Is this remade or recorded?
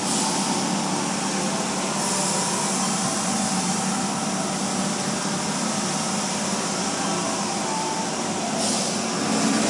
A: recorded